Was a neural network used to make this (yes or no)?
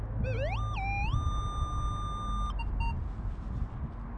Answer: no